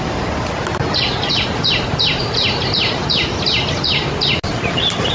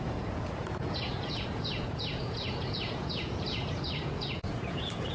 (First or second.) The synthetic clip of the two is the second